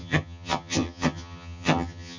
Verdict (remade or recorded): remade